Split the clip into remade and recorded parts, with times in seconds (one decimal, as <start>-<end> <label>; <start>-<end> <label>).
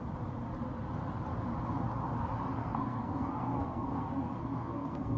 0.0-2.6 recorded; 2.6-5.2 remade